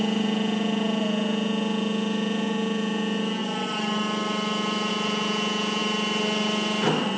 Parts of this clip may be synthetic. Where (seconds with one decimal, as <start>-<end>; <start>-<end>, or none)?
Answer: 0.0-3.4; 4.9-5.8